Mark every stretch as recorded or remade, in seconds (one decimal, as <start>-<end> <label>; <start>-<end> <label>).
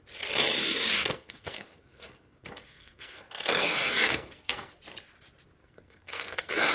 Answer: 0.0-1.0 recorded; 1.0-4.8 remade; 4.8-5.6 recorded; 5.6-6.7 remade